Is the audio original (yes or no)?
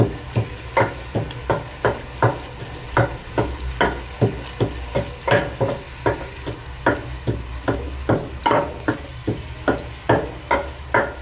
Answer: yes